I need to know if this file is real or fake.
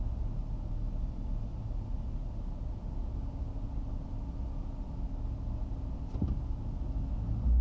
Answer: real